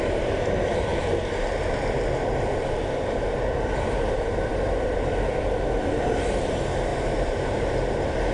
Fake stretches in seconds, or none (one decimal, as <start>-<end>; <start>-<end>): 6.9-7.7